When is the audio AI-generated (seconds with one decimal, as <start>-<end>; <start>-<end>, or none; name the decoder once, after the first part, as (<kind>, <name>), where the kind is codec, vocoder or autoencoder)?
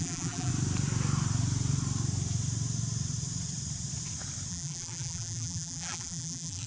0.0-0.5 (vocoder, BigVGAN v2); 4.5-6.7